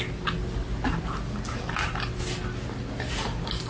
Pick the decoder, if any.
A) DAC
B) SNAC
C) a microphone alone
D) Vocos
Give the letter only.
C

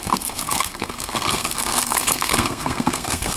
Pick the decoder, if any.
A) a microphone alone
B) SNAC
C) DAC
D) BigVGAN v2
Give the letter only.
B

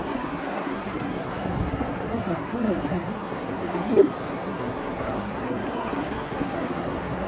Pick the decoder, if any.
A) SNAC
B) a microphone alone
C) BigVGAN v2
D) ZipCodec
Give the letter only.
A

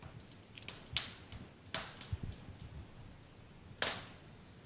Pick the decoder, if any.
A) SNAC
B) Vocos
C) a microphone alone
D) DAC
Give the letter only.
C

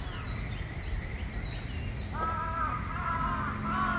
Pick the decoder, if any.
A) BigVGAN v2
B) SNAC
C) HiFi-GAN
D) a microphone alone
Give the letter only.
D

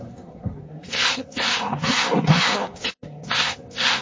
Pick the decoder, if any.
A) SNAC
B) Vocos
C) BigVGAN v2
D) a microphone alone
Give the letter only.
A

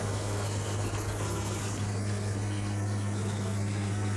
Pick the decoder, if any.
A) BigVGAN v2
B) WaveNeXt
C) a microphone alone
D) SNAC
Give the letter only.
D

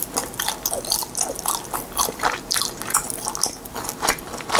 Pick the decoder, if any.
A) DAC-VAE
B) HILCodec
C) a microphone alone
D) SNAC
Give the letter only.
C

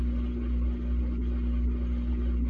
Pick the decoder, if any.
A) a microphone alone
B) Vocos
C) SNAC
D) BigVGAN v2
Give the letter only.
A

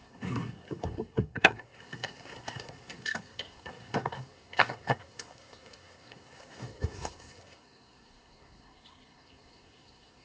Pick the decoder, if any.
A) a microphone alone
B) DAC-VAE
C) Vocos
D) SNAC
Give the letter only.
D